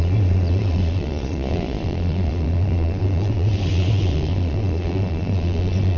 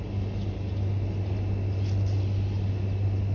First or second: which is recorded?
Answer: second